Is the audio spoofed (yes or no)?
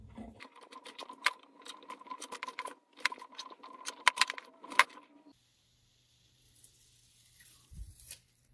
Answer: yes